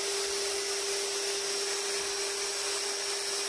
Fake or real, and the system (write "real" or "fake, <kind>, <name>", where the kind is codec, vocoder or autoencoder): real